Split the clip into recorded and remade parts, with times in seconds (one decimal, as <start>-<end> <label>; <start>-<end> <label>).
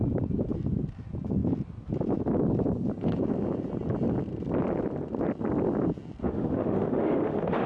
0.0-6.2 recorded; 6.2-7.7 remade